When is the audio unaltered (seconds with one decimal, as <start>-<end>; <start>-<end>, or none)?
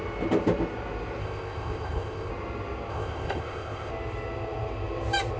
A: 0.0-1.2; 2.3-2.9; 3.9-5.4